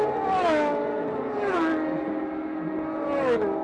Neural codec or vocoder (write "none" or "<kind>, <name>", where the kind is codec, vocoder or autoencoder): none